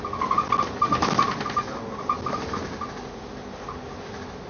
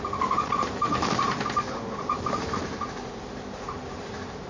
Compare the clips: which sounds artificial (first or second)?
second